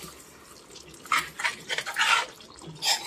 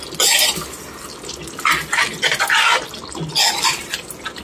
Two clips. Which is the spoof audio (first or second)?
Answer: first